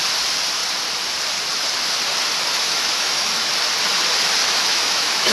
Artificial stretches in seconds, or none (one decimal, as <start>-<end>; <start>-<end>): 2.5-3.5; 4.4-5.3